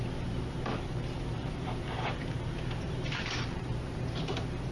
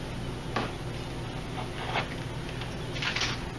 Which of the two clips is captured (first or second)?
second